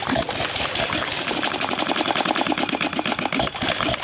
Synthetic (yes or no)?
no